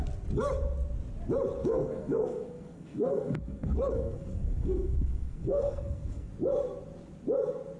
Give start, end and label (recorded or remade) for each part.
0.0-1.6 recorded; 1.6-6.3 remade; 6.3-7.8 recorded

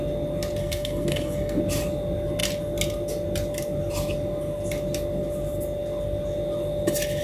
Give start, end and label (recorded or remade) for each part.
0.0-0.6 recorded; 0.6-1.6 remade; 1.6-7.2 recorded

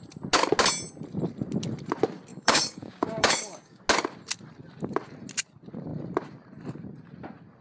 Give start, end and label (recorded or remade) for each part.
0.0-2.3 recorded; 2.3-3.8 remade; 3.8-7.6 recorded